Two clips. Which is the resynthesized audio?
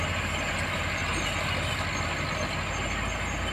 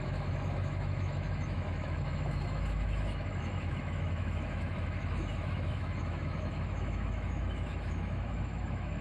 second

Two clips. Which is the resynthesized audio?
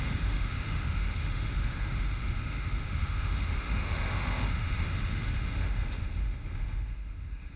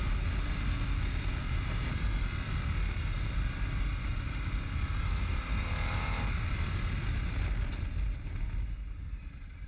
first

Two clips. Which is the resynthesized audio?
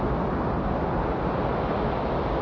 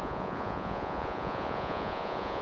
second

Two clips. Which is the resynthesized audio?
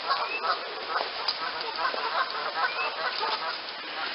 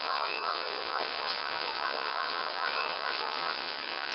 second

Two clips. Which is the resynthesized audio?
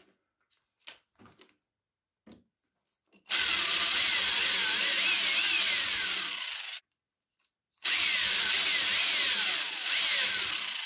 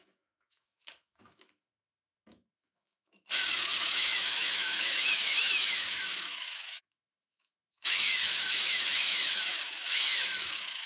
second